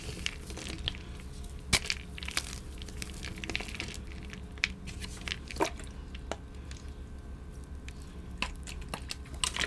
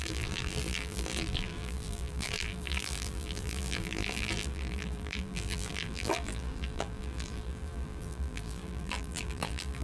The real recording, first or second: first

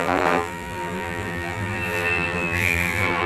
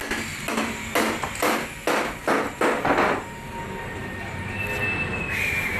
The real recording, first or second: second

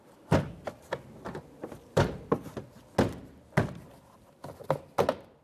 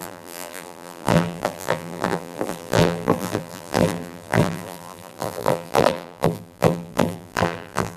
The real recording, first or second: first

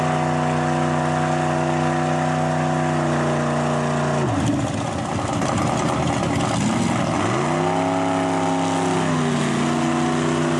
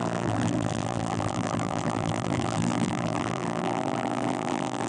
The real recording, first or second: first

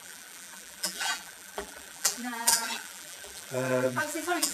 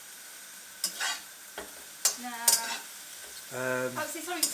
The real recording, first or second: second